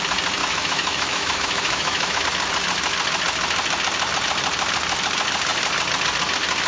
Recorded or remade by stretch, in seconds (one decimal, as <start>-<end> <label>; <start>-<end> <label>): 0.0-0.4 recorded; 0.4-2.2 remade; 2.2-6.7 recorded